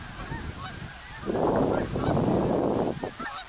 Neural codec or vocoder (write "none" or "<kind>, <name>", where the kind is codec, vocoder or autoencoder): none